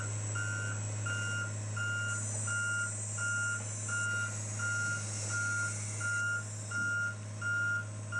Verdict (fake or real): real